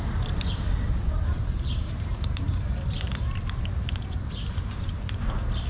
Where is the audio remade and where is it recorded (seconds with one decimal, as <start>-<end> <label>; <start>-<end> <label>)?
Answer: 0.0-1.4 recorded; 1.4-4.8 remade; 4.8-5.7 recorded